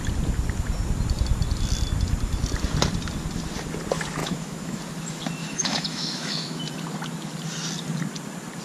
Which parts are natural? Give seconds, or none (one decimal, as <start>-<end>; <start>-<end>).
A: 0.0-4.2; 4.8-5.4; 6.6-8.6